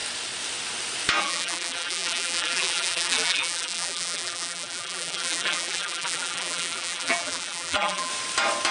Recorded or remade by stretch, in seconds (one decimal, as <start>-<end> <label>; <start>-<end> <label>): 0.0-1.2 recorded; 1.2-8.1 remade; 8.1-8.7 recorded